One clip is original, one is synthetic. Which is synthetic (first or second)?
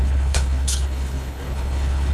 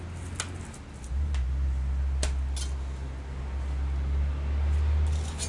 first